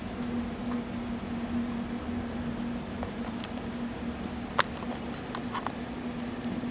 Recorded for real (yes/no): yes